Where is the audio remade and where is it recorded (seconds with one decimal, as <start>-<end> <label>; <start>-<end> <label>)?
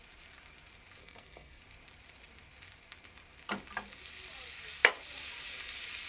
0.0-1.0 recorded; 1.0-1.6 remade; 1.6-6.1 recorded